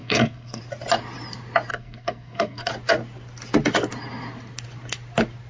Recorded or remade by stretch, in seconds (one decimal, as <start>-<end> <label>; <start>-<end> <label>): 0.0-0.6 remade; 0.6-1.7 recorded; 1.7-2.7 remade; 2.7-5.5 recorded